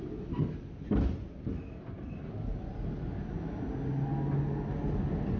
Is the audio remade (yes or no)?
no